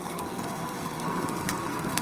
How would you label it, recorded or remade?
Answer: remade